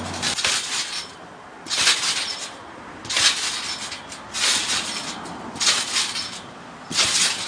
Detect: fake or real real